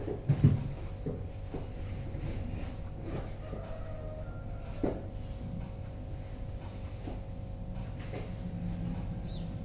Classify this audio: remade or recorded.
recorded